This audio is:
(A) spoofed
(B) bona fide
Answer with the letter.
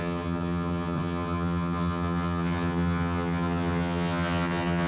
A